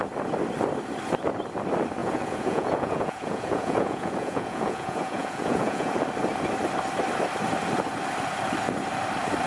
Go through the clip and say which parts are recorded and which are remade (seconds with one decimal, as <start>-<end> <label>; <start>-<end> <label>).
0.0-2.0 recorded; 2.0-5.9 remade; 5.9-9.5 recorded